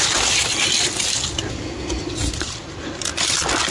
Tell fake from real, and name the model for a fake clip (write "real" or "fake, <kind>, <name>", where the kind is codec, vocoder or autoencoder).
fake, vocoder, BigVGAN v2